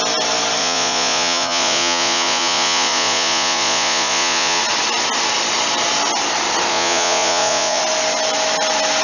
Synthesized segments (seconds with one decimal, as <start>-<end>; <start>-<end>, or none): 0.6-4.6; 6.7-7.8